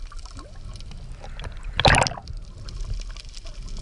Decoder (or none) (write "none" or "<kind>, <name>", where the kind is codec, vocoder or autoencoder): none